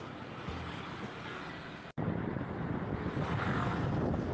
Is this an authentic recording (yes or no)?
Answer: yes